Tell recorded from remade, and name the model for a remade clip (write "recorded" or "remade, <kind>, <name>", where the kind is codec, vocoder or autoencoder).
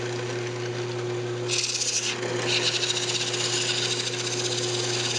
recorded